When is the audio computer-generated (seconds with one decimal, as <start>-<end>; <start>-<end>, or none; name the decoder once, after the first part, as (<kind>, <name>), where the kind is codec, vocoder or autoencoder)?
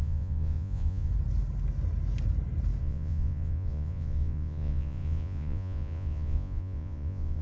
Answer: 0.0-1.1 (vocoder, Vocos); 2.8-7.4